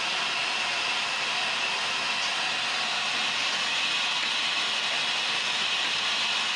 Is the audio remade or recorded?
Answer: recorded